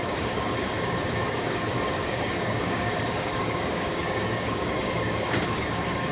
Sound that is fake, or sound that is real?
fake